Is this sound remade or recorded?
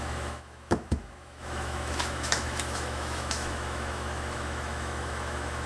remade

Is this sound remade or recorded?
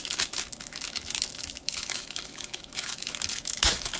remade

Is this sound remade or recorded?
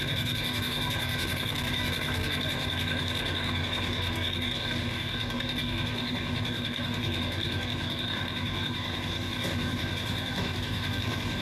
remade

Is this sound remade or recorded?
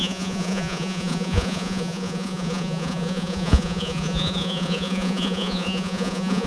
remade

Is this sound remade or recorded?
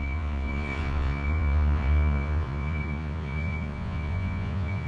remade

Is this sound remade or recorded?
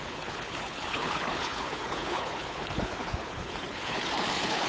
remade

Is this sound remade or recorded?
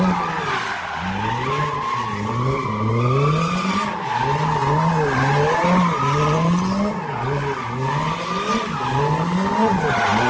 recorded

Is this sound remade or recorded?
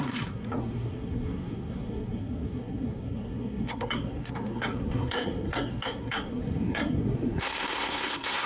remade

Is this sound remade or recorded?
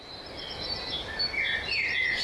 recorded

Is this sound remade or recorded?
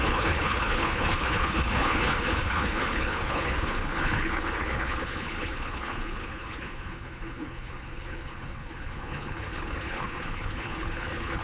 remade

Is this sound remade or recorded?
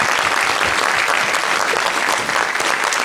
recorded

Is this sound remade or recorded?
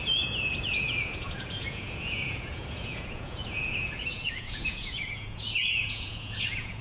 remade